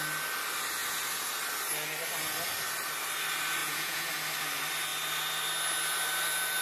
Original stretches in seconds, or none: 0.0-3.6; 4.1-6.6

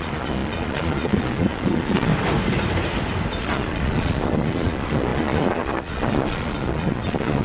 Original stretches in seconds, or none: 2.1-3.4